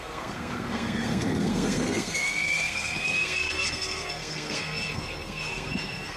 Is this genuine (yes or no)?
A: no